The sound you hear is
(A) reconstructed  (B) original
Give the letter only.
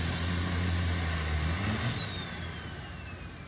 B